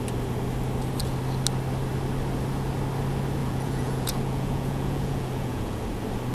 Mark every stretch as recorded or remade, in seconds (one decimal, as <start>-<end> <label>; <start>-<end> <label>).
0.0-3.4 recorded; 3.4-5.8 remade; 5.8-6.3 recorded